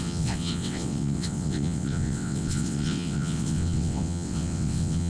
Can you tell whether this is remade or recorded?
remade